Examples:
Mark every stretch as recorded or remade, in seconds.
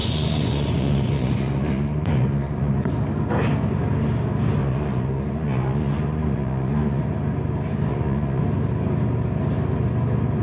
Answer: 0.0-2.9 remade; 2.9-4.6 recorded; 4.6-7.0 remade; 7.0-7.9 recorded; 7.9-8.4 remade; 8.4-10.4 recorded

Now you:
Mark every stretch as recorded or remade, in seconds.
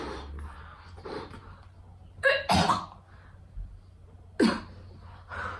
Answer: 0.0-5.6 recorded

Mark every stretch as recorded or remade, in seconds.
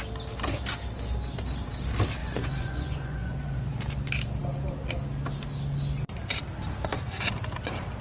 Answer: 0.0-2.2 recorded; 2.2-3.7 remade; 3.7-8.0 recorded